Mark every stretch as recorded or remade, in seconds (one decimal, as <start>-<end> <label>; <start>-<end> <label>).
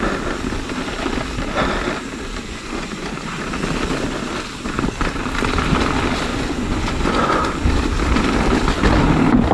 0.0-2.5 recorded; 2.5-3.4 remade; 3.4-6.3 recorded; 6.3-7.4 remade; 7.4-9.5 recorded